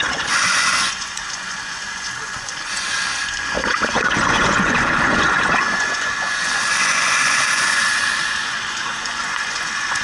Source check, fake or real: fake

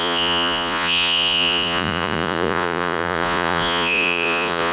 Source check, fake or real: fake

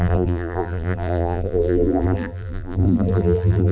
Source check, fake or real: fake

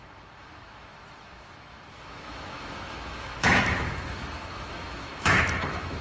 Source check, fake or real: fake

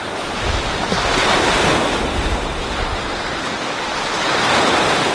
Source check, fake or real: real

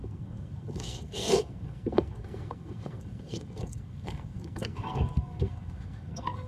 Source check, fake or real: fake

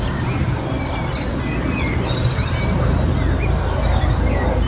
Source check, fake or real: real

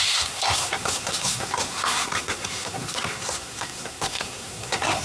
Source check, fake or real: fake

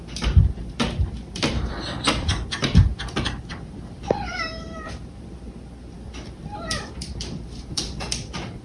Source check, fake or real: fake